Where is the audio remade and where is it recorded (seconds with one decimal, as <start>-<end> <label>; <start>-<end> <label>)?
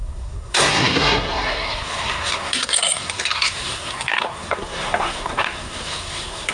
0.0-6.5 remade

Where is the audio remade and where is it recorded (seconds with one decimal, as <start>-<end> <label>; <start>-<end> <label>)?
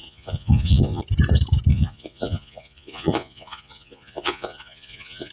0.0-1.0 remade; 1.0-1.7 recorded; 1.7-5.3 remade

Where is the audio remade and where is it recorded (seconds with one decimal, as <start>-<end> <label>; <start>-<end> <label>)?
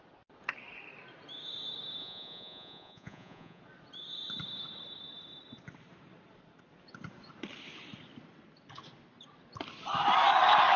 0.0-2.0 recorded; 2.0-3.6 remade; 3.6-10.8 recorded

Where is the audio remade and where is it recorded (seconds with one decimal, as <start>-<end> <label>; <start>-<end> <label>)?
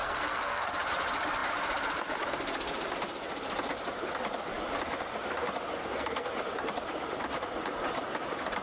0.0-0.7 remade; 0.7-5.8 recorded; 5.8-6.3 remade; 6.3-8.6 recorded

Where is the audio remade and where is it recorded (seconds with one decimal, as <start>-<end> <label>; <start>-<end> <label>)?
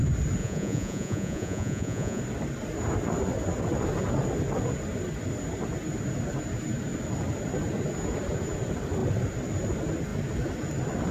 0.0-0.4 recorded; 0.4-2.2 remade; 2.2-11.1 recorded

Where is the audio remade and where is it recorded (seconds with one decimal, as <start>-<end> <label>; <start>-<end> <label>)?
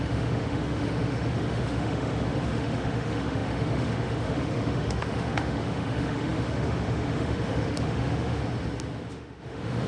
0.0-8.4 remade; 8.4-9.1 recorded; 9.1-9.9 remade